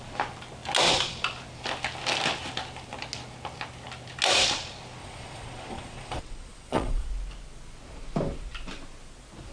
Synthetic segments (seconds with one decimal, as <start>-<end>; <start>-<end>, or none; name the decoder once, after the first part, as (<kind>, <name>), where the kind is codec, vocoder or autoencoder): 5.0-7.1 (vocoder, Vocos)